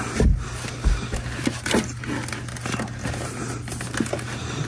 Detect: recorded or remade recorded